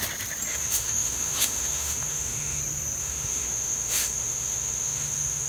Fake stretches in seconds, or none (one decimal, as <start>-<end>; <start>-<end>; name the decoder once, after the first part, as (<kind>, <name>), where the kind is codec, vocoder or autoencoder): 0.5-2.6 (autoencoder, DAC-VAE); 3.0-5.5